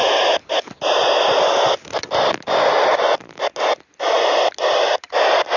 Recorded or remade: recorded